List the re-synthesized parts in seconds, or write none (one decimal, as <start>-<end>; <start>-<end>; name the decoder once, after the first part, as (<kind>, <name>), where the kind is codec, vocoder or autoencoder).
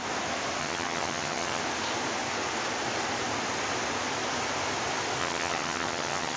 0.6-1.6 (vocoder, HiFi-GAN); 5.2-6.4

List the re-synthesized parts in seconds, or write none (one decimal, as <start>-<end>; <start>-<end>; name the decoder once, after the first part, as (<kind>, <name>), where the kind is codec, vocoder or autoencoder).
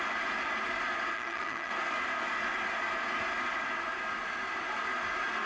1.1-1.7 (vocoder, HiFi-GAN)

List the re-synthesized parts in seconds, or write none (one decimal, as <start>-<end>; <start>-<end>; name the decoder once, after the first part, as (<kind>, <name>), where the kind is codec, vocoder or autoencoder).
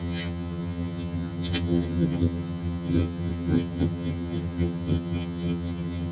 0.0-6.1 (vocoder, HiFi-GAN)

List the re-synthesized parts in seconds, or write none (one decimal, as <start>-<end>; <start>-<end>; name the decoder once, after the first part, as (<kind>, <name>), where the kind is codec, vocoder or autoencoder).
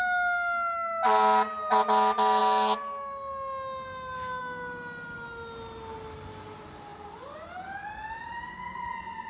none